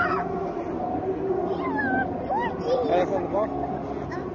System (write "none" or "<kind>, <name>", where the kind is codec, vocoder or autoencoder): none